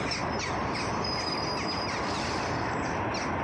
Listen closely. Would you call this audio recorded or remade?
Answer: recorded